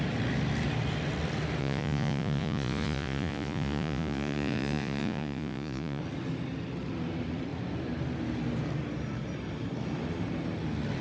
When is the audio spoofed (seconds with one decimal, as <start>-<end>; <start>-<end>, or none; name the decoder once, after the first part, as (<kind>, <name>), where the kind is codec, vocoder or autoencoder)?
1.6-6.0 (vocoder, Vocos)